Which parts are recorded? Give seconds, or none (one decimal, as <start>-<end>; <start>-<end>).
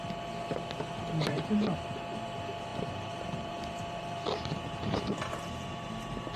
0.0-1.3; 1.9-2.7; 5.9-6.4